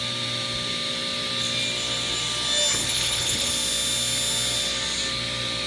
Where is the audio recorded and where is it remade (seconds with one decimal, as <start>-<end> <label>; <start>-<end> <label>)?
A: 0.0-2.8 recorded; 2.8-3.5 remade; 3.5-5.7 recorded

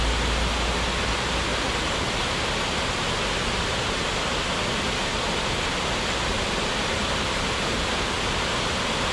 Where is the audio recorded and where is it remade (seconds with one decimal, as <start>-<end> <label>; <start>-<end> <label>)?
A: 0.0-9.1 recorded

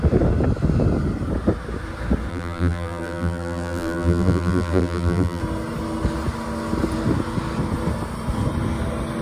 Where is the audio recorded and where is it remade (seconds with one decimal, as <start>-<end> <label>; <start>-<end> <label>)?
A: 0.0-2.3 recorded; 2.3-5.4 remade; 5.4-9.2 recorded

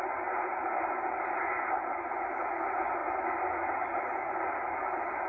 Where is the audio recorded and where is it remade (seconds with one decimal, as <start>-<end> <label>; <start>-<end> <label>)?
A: 0.0-5.3 recorded